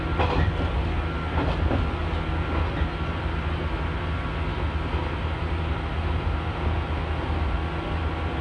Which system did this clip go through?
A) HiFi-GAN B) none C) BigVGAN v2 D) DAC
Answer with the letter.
B